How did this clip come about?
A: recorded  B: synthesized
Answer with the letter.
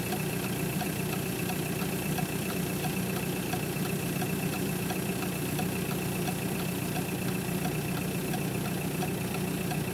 A